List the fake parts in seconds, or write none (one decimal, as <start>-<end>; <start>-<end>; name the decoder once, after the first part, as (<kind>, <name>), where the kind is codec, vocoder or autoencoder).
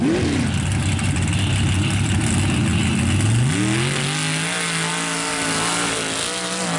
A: none